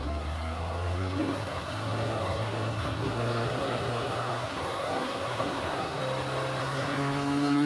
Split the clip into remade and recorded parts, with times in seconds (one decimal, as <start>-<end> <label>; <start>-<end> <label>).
0.0-6.0 remade; 6.0-6.6 recorded; 6.6-7.7 remade